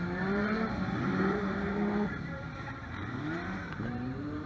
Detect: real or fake fake